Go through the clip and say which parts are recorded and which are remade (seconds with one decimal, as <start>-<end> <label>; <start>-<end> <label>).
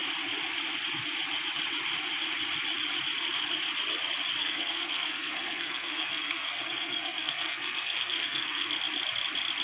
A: 0.0-4.4 recorded; 4.4-8.8 remade; 8.8-9.6 recorded